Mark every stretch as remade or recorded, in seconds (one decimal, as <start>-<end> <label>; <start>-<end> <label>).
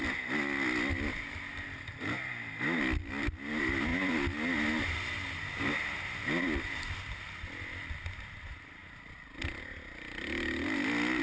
0.0-11.2 recorded